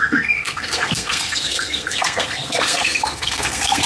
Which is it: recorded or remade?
remade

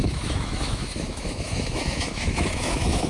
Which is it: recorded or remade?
remade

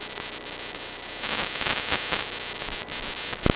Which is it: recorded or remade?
recorded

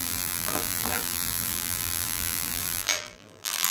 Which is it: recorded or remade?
remade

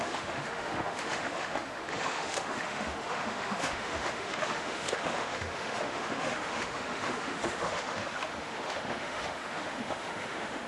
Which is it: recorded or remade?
remade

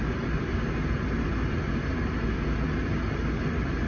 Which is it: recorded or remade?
recorded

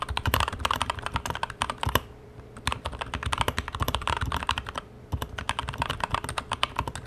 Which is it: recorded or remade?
remade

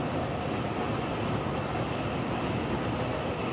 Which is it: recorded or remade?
recorded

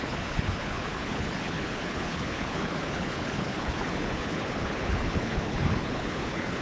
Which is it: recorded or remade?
remade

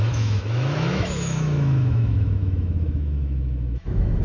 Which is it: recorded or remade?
remade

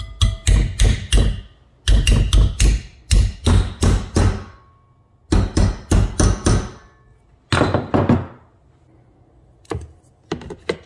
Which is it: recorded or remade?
recorded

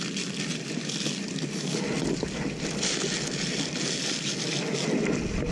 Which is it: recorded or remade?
recorded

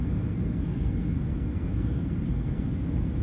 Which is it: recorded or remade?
remade